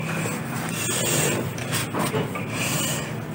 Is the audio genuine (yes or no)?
yes